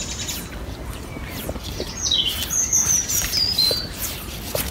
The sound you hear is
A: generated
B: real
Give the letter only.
B